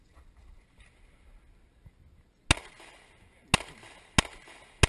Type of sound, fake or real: real